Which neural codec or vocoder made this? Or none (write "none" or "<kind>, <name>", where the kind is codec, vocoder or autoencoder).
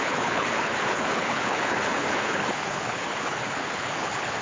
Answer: codec, HILCodec